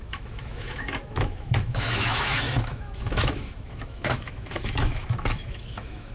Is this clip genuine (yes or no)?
no